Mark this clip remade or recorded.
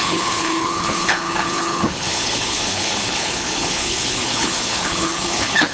remade